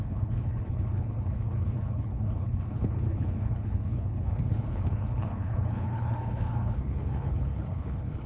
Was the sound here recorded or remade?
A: remade